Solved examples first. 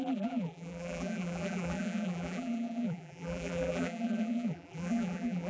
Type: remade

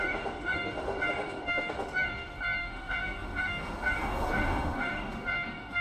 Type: remade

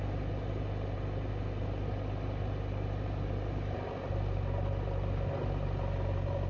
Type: recorded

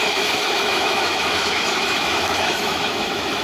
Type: remade